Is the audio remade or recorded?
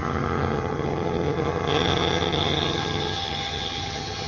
remade